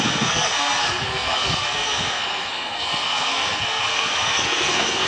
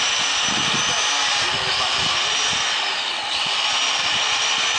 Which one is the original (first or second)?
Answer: second